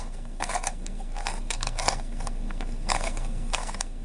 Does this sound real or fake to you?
fake